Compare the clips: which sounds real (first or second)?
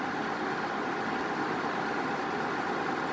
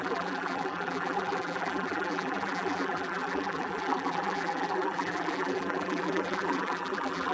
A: first